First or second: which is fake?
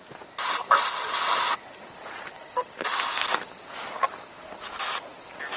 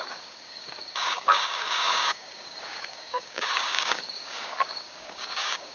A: second